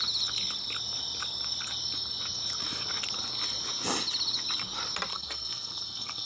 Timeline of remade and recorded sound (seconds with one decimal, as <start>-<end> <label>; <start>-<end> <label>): 0.0-5.1 recorded; 5.1-6.3 remade